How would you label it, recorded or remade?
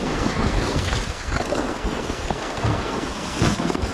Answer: remade